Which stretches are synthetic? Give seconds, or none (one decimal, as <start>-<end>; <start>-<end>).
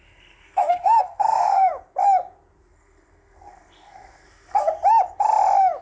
0.0-1.7; 2.7-4.6